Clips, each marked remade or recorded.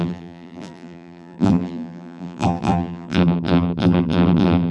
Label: remade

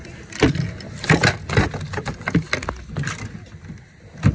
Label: recorded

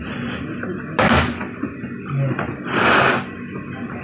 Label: recorded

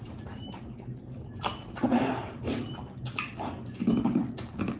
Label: remade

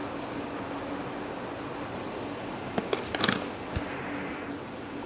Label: recorded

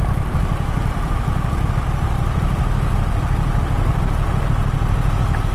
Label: recorded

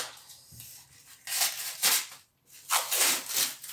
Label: recorded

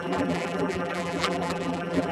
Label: remade